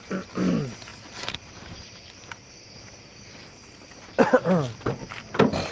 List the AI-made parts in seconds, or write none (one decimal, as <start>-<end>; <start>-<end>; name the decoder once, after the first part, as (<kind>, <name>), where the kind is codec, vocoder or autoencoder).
0.9-4.3 (vocoder, BigVGAN v2); 5.0-5.7